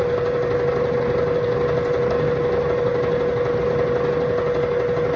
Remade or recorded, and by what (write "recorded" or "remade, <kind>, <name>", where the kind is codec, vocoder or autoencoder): recorded